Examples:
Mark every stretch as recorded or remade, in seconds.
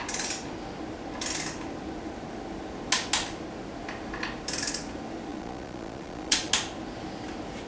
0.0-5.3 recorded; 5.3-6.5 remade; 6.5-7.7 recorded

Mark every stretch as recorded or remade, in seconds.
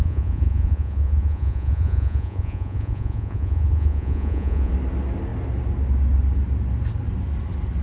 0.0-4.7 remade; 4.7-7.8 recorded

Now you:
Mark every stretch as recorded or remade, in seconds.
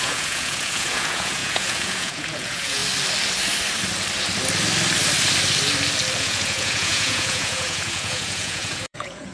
0.0-2.8 remade; 2.8-6.2 recorded; 6.2-9.3 remade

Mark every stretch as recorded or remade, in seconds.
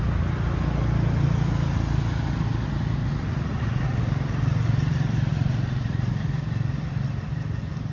0.0-3.0 recorded; 3.0-4.0 remade; 4.0-5.3 recorded; 5.3-6.1 remade; 6.1-7.9 recorded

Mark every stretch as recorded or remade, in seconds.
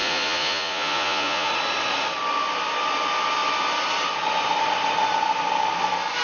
0.0-1.5 remade; 1.5-6.2 recorded